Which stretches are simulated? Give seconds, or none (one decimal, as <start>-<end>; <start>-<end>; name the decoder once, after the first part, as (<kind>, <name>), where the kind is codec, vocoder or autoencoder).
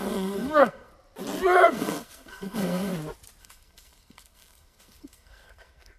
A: 0.0-0.9 (codec, SNAC); 1.7-2.9; 3.4-6.0